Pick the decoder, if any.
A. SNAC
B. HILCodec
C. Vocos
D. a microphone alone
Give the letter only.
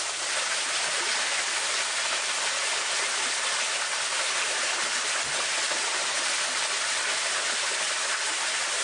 D